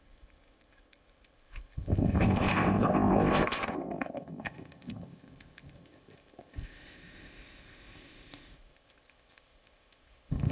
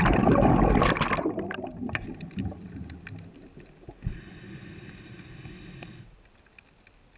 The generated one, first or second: first